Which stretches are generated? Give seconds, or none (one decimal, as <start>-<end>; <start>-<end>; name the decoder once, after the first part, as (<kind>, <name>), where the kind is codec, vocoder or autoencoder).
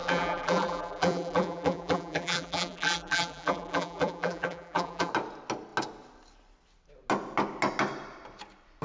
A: 0.0-5.1 (vocoder, BigVGAN v2)